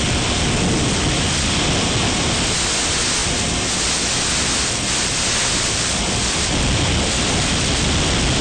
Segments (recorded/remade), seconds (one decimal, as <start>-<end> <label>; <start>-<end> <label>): 0.0-8.4 recorded